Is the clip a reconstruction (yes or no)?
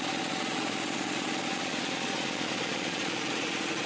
yes